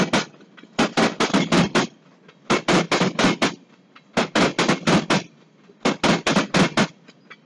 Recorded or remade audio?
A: recorded